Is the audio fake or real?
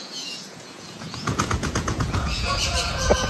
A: fake